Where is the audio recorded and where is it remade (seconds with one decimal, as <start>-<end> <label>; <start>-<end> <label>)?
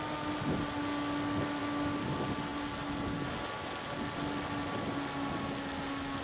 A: 0.0-6.2 recorded